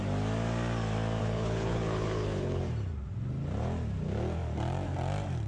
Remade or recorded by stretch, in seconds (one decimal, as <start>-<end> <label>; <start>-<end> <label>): 0.0-1.2 recorded; 1.2-2.6 remade; 2.6-5.5 recorded